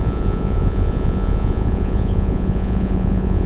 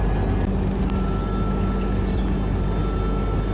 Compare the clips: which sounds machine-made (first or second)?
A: first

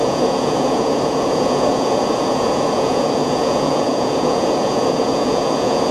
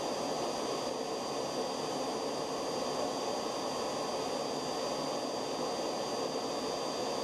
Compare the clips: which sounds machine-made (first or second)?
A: first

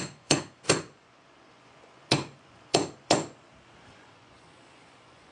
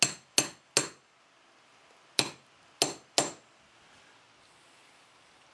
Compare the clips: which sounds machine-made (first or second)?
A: first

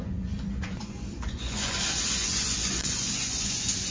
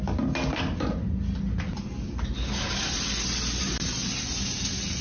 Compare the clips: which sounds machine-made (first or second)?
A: first